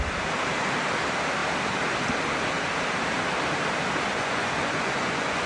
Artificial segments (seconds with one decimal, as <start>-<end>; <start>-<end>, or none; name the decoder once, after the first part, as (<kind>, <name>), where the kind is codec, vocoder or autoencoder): 4.1-5.5 (vocoder, Vocos)